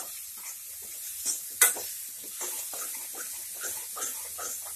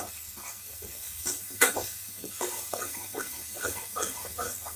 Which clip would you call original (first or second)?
first